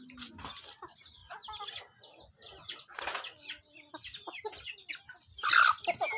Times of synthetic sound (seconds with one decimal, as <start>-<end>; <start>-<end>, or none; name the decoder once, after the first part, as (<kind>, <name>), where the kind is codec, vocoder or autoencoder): none